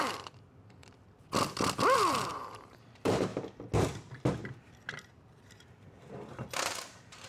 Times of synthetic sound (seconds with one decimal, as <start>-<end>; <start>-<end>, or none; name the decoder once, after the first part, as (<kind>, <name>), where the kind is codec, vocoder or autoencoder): 0.0-0.8 (vocoder, BigVGAN v2); 2.1-3.3; 4.4-7.3